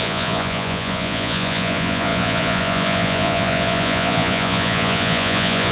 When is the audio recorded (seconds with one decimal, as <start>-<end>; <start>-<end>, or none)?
none